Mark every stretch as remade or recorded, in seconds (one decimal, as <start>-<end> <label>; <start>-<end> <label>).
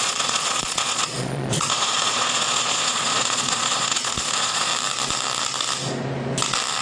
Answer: 0.0-4.7 remade; 4.7-6.8 recorded